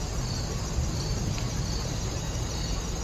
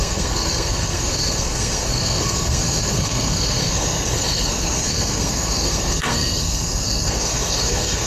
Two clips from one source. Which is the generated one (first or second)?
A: second